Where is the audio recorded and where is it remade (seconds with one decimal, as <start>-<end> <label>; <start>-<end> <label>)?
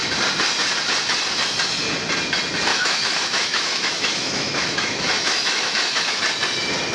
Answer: 0.0-2.7 recorded; 2.7-6.2 remade; 6.2-6.9 recorded